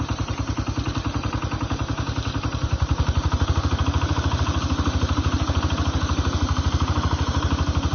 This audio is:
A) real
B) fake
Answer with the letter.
B